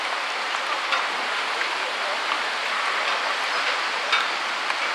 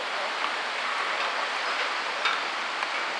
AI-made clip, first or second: second